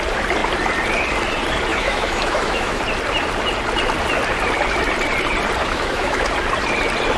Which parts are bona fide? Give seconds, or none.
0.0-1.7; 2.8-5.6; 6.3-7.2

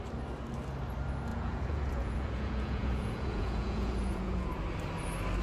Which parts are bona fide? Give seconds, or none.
0.0-1.3; 4.5-5.4

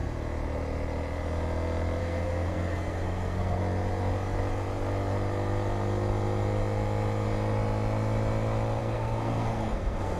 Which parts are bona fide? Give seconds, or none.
0.0-2.0; 3.6-8.8

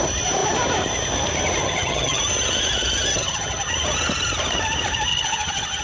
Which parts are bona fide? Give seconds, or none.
0.0-1.6; 2.2-3.1; 3.7-5.1

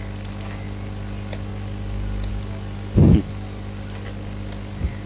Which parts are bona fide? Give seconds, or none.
0.0-5.1

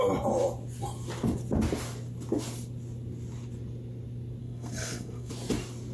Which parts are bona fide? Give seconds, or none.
0.0-4.4; 5.3-5.9

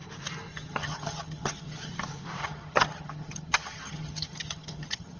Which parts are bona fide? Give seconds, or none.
0.0-0.5; 1.9-2.4